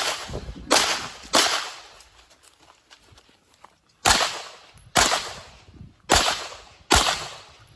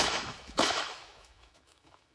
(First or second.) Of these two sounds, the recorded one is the first